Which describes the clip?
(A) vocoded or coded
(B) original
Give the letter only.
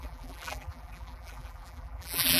A